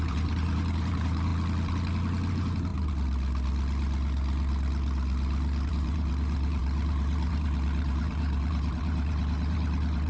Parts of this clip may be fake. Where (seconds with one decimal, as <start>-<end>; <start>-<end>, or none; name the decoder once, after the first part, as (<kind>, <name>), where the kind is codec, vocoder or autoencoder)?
0.0-1.3 (vocoder, BigVGAN v2); 2.3-2.7; 5.7-10.1